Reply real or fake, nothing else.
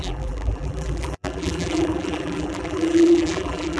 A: fake